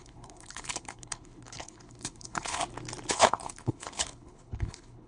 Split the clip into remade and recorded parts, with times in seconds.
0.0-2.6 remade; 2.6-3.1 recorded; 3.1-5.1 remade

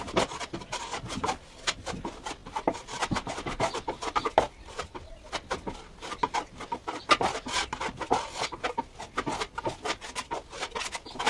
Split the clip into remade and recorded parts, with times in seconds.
0.0-11.3 recorded

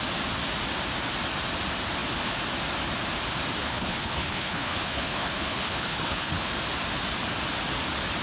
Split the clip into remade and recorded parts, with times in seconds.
0.0-3.6 recorded; 3.6-6.5 remade; 6.5-8.2 recorded

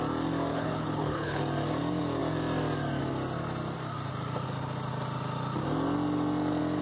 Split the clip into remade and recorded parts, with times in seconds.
0.0-0.5 recorded; 0.5-1.4 remade; 1.4-6.8 recorded

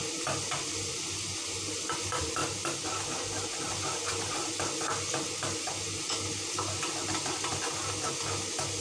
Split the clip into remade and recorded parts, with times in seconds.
0.0-8.8 recorded

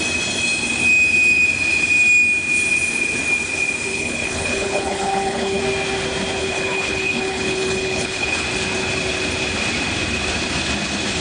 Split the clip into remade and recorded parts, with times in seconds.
0.0-3.9 recorded; 3.9-5.6 remade; 5.6-6.4 recorded; 6.4-8.4 remade; 8.4-11.2 recorded

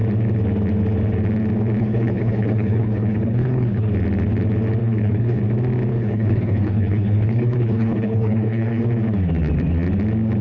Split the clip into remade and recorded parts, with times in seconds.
0.0-1.8 recorded; 1.8-3.9 remade; 3.9-4.8 recorded; 4.8-5.4 remade; 5.4-5.9 recorded; 5.9-8.8 remade; 8.8-10.4 recorded